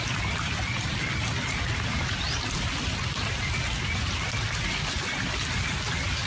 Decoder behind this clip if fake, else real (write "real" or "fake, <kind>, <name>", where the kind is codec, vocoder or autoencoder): real